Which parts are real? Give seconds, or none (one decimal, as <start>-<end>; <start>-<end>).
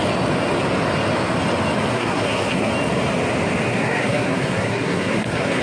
0.0-1.9; 2.7-3.7